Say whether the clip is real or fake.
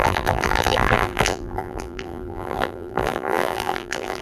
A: fake